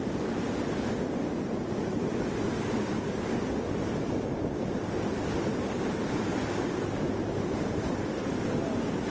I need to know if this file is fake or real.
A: real